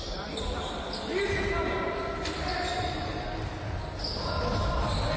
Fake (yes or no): no